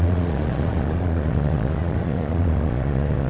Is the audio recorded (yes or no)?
no